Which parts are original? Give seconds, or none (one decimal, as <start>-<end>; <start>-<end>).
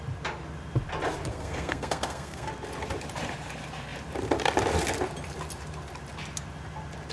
0.0-1.3; 2.5-7.1